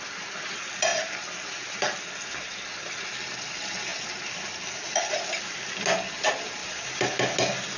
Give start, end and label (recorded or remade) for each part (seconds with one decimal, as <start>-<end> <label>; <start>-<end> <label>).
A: 0.0-7.8 recorded